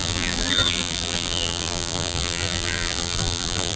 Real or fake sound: fake